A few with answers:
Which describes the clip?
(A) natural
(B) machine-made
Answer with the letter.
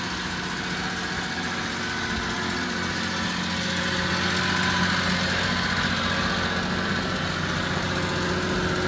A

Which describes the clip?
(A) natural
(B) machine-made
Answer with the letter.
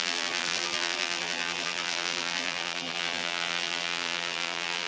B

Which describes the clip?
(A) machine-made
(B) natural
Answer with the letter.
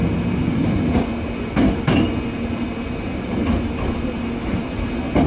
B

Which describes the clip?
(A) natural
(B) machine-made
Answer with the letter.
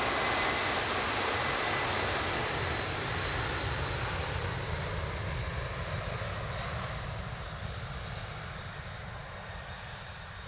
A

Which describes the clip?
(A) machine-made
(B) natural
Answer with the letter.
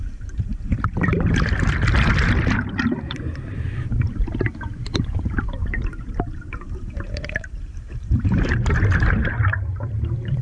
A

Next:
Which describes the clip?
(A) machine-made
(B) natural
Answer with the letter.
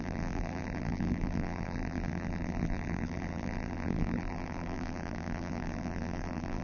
A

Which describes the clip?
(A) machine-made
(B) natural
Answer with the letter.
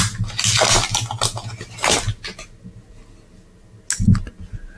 B